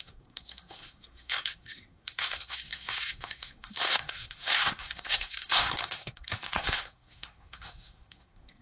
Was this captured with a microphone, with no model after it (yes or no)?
no